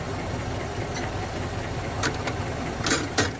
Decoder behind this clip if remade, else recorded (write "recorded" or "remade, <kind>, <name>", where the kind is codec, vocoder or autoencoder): recorded